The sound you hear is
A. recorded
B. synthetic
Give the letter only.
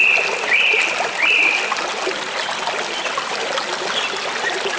B